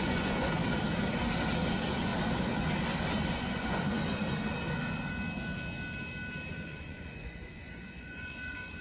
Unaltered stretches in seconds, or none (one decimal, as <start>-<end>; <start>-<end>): 0.6-1.7; 2.1-3.3; 4.2-6.5